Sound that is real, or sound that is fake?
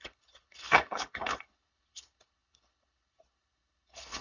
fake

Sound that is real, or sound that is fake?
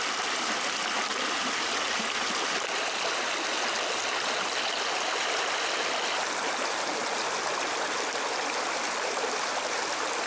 real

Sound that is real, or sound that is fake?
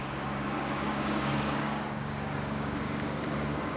fake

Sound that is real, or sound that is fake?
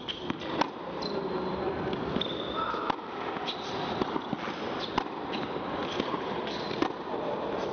real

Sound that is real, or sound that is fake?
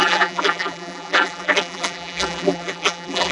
fake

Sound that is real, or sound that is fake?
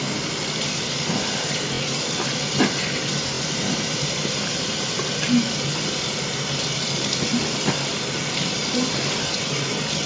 real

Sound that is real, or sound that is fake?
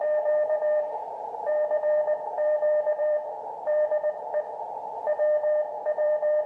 fake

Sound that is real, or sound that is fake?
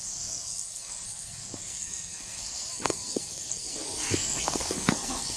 fake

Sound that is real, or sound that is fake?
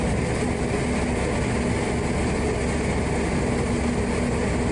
real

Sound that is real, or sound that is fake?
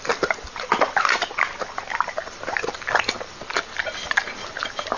real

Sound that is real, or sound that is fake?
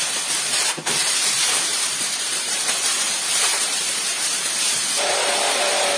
fake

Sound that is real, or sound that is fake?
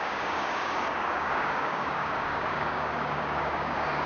fake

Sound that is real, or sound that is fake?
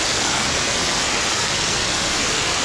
fake